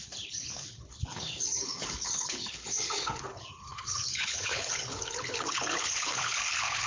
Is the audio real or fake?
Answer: fake